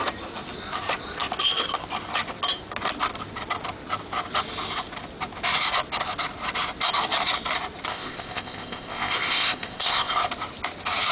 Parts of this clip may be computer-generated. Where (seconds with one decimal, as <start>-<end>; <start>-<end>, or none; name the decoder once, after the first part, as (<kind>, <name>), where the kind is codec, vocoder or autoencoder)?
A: 7.9-10.3 (codec, ZipCodec)